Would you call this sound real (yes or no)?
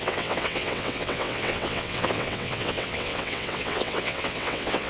no